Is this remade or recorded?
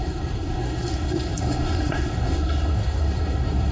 remade